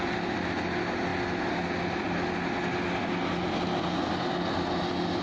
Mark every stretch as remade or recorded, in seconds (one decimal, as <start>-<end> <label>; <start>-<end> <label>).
0.0-5.2 recorded